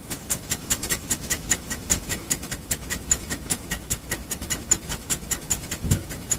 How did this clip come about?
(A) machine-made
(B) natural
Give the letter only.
A